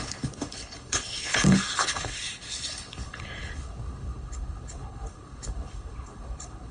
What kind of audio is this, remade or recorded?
remade